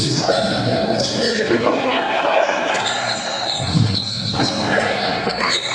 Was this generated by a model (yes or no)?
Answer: yes